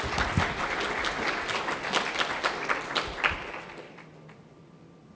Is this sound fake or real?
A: real